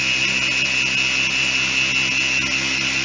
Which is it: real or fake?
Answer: real